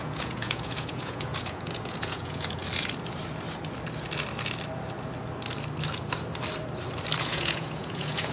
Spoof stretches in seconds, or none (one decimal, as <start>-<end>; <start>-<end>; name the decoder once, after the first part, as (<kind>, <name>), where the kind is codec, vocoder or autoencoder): 0.0-2.6 (vocoder, Vocos); 7.2-8.3